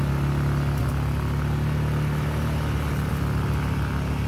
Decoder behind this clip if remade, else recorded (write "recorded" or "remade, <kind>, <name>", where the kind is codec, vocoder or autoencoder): recorded